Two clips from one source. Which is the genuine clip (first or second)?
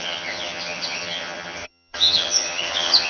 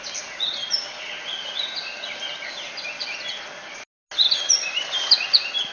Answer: second